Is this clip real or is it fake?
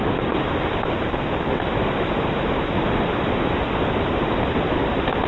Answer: real